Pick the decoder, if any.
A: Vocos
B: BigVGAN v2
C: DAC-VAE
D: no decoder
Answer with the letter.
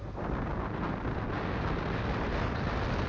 D